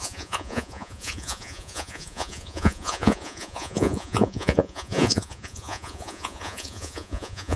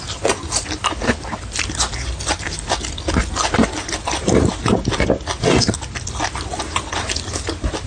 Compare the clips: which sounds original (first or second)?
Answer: second